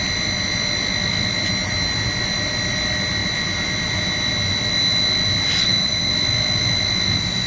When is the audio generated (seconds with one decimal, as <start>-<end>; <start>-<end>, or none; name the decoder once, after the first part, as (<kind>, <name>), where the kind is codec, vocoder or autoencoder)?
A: 5.6-6.1 (codec, SNAC)